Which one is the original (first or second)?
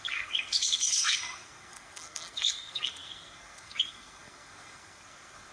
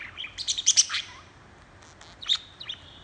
second